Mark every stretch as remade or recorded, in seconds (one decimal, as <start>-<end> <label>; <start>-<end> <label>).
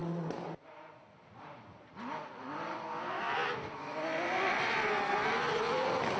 0.0-6.2 recorded